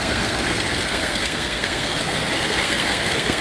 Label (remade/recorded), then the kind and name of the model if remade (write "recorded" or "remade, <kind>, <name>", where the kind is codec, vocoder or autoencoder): remade, codec, SNAC